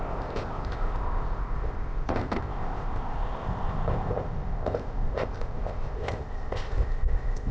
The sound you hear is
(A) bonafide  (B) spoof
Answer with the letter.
B